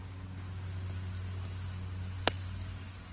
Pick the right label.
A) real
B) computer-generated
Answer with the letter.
A